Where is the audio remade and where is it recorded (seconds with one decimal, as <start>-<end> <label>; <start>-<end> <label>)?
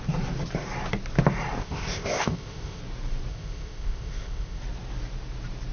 0.0-1.6 recorded; 1.6-2.8 remade; 2.8-3.3 recorded; 3.3-4.6 remade; 4.6-5.7 recorded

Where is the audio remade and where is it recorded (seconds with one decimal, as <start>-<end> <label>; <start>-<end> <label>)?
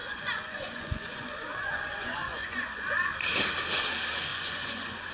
0.0-3.1 remade; 3.1-4.3 recorded; 4.3-5.1 remade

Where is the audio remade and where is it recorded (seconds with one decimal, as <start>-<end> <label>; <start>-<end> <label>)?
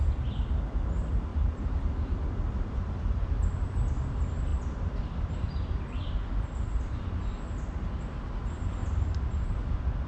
0.0-1.3 recorded; 1.3-1.8 remade; 1.8-10.1 recorded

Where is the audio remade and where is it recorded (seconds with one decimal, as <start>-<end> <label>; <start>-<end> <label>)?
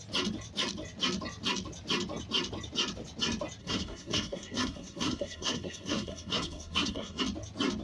0.0-3.6 recorded; 3.6-7.2 remade; 7.2-7.8 recorded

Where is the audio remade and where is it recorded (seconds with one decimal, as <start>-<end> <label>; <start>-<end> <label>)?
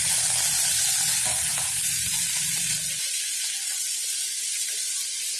0.0-1.3 recorded; 1.3-4.5 remade; 4.5-5.4 recorded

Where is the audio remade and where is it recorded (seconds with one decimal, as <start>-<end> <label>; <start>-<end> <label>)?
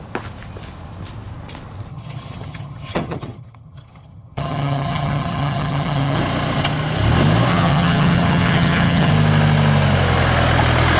0.0-1.9 recorded; 1.9-6.2 remade; 6.2-7.5 recorded; 7.5-9.1 remade; 9.1-11.0 recorded